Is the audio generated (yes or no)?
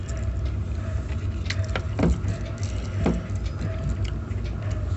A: no